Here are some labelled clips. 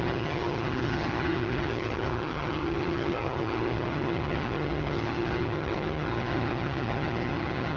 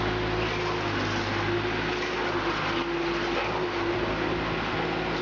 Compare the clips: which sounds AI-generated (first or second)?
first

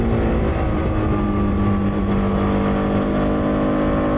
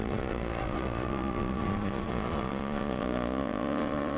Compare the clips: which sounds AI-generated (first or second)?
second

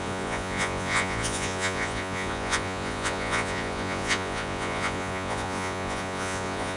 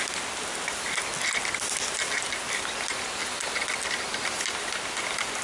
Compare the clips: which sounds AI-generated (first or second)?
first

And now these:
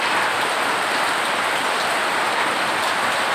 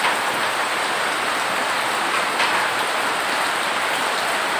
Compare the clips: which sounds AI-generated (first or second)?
second